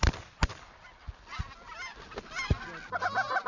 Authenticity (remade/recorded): recorded